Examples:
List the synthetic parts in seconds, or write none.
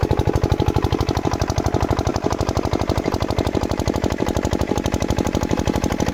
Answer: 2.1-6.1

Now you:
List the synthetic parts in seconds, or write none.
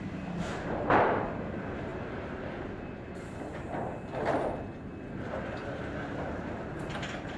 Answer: 0.0-1.9; 6.3-7.4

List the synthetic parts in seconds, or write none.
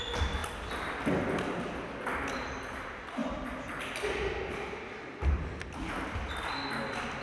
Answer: none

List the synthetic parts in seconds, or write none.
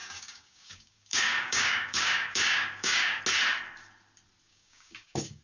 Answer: 0.0-3.2; 4.5-5.4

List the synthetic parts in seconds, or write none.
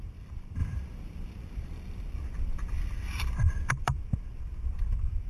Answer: 0.0-5.3